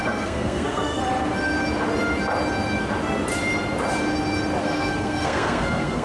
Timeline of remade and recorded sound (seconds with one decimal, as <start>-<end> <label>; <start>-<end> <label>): 0.0-1.0 remade; 1.0-4.6 recorded; 4.6-6.0 remade